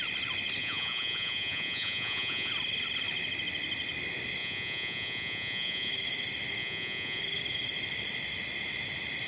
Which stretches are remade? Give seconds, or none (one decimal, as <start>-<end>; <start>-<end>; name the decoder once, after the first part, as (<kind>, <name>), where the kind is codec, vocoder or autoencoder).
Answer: 0.6-2.5 (vocoder, Vocos); 4.4-5.9; 6.6-7.2